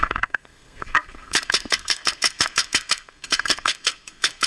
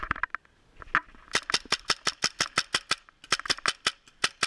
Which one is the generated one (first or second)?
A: first